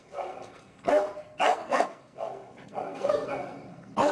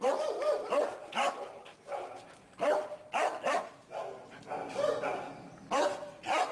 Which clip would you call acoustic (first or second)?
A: second